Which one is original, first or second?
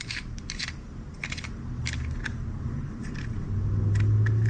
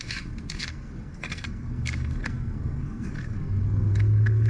first